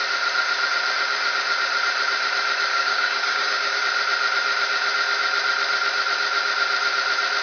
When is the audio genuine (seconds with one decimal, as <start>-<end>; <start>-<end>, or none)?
0.0-2.7; 3.8-7.4